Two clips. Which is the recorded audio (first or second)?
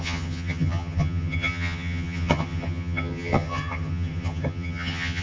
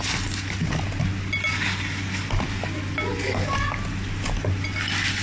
second